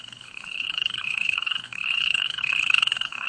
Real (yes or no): no